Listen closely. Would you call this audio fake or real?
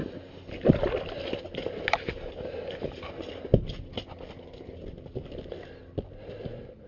real